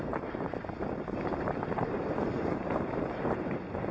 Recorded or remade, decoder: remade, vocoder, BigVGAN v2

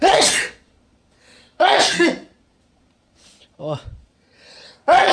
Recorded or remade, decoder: remade, vocoder, Vocos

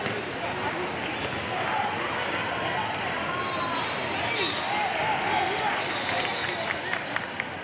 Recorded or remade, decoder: recorded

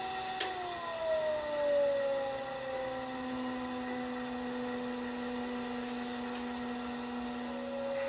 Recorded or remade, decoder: recorded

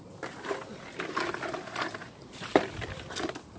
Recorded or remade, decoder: recorded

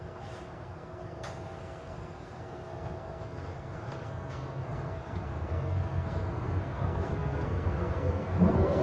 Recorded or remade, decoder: remade, codec, SNAC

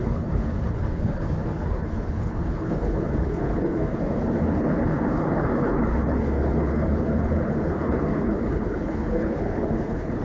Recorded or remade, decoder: remade, codec, HILCodec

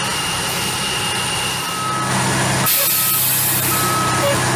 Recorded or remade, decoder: recorded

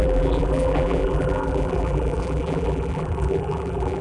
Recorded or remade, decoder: remade, vocoder, BigVGAN v2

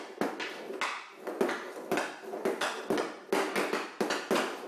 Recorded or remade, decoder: recorded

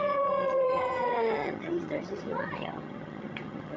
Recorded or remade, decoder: remade, vocoder, HiFi-GAN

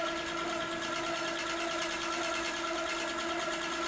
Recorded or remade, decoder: recorded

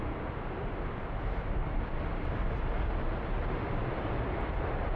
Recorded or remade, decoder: recorded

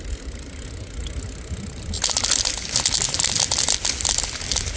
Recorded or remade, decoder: recorded